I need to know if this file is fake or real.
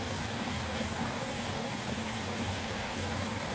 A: fake